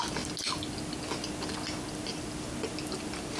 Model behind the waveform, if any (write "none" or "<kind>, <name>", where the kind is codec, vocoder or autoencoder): none